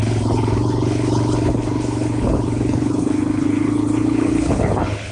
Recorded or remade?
remade